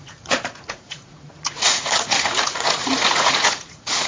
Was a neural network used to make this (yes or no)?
yes